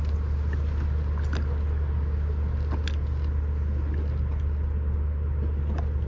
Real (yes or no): yes